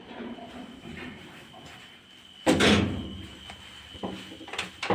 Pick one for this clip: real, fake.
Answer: real